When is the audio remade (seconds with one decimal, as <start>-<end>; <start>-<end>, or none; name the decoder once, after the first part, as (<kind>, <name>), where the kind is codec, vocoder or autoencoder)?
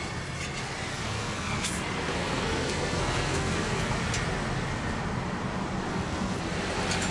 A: 0.9-1.7 (codec, SNAC); 2.1-3.9; 5.9-6.4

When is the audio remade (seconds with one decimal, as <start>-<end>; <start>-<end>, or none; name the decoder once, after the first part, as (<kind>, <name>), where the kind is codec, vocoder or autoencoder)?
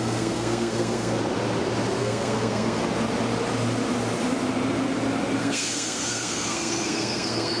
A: 0.0-1.2 (codec, SNAC); 2.0-2.8; 5.4-7.6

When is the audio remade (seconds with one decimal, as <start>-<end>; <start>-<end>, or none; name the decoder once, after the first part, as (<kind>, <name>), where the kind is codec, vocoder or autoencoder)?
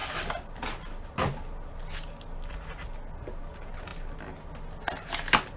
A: none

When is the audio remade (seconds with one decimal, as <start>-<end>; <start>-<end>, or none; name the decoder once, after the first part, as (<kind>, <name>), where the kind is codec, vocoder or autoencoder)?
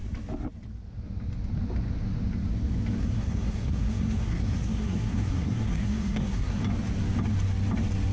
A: 3.0-6.6 (codec, SNAC)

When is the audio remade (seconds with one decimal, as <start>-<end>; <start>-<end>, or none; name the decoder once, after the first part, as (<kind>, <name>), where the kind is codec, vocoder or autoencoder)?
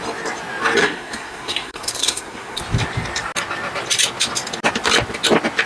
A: 0.8-2.6 (codec, SNAC)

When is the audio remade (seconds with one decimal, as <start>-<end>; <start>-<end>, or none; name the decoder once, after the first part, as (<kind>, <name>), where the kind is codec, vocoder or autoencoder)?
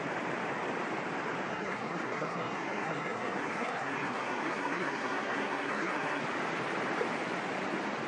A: 1.5-6.2 (codec, SNAC)